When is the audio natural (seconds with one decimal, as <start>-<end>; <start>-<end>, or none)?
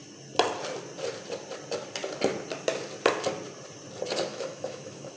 0.0-4.3